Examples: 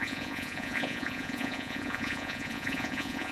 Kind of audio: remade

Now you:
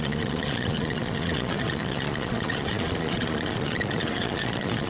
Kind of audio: remade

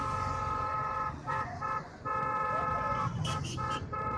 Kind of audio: remade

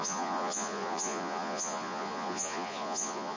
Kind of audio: remade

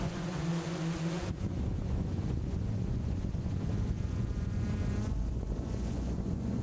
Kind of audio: remade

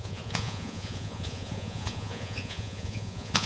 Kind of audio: remade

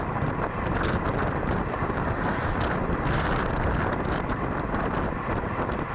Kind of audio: recorded